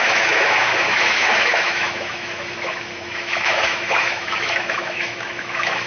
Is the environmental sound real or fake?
fake